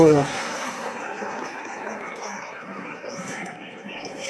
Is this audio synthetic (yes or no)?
yes